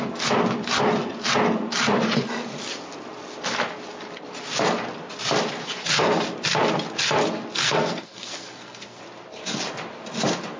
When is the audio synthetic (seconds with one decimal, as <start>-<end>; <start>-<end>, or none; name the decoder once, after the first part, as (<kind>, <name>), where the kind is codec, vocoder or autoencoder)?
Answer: 7.6-9.0 (codec, SNAC)